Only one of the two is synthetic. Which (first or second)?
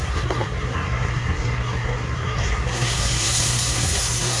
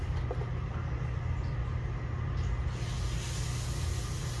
first